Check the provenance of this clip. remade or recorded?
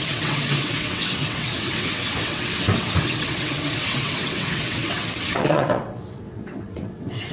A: remade